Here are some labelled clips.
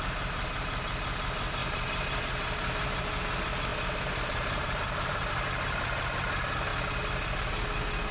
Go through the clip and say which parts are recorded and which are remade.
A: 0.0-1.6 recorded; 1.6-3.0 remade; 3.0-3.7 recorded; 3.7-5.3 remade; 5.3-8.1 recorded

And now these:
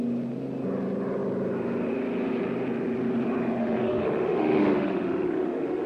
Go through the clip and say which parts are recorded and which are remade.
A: 0.0-3.6 recorded; 3.6-5.9 remade

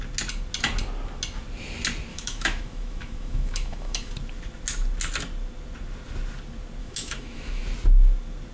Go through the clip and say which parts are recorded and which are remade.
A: 0.0-2.1 recorded; 2.1-4.1 remade; 4.1-6.8 recorded; 6.8-7.6 remade; 7.6-8.5 recorded